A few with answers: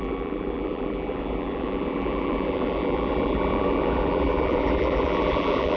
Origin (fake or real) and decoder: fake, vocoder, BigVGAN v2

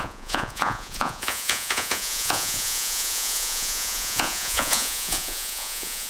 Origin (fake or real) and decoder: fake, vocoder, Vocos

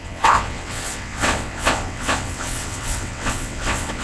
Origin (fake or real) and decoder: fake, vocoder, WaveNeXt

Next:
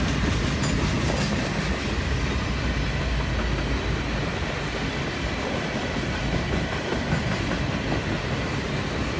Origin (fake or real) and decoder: real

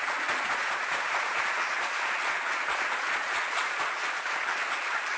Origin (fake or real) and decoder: fake, vocoder, Vocos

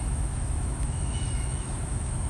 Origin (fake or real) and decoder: fake, autoencoder, DAC-VAE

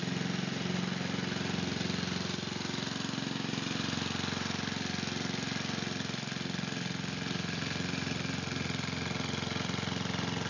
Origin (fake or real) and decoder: real